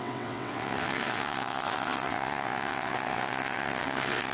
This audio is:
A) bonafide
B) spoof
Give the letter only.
B